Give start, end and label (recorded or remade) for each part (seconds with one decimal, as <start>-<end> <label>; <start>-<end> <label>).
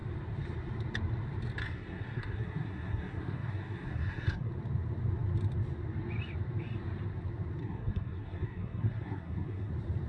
0.0-1.6 recorded; 1.6-4.5 remade; 4.5-7.6 recorded; 7.6-9.7 remade; 9.7-10.1 recorded